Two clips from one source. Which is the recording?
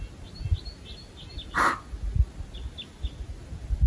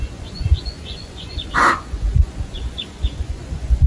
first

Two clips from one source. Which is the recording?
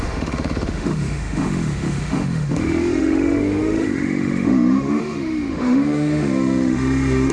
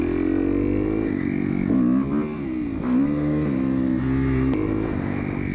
second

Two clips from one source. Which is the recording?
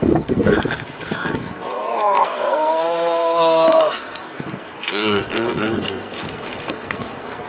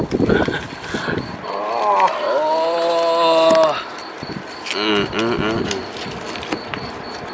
second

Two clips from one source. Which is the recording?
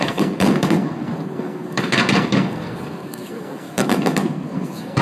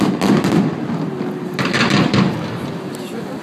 second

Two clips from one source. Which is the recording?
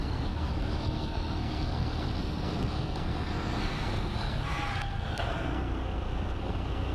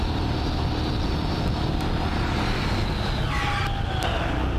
second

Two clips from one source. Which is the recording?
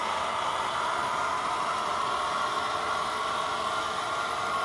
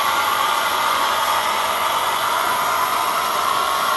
first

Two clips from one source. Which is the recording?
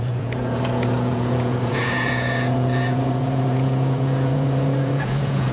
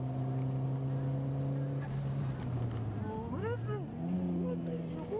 second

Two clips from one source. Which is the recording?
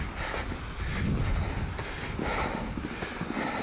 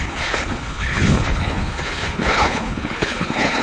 first